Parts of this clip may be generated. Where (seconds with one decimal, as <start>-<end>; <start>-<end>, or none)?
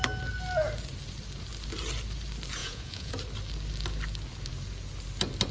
2.6-3.1